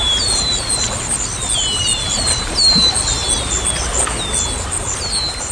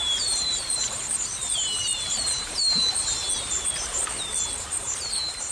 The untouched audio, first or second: first